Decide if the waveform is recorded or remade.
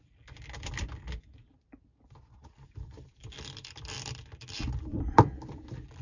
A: remade